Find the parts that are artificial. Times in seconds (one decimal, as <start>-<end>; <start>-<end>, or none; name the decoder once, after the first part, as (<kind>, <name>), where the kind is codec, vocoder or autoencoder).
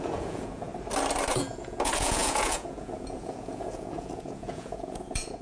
0.0-0.7 (vocoder, Vocos); 1.3-5.4